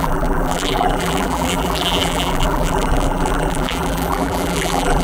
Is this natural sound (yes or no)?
no